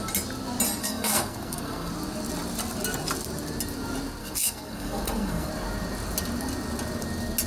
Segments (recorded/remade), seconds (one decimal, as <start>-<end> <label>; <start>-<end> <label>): 0.0-0.8 recorded; 0.8-1.9 remade; 1.9-4.2 recorded; 4.2-5.5 remade; 5.5-7.5 recorded